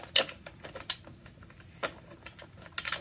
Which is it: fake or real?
real